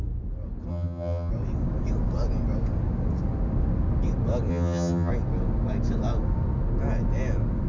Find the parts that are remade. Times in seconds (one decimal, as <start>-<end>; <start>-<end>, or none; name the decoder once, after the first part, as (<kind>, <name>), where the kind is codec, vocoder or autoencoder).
0.7-1.3 (vocoder, HiFi-GAN); 4.5-5.1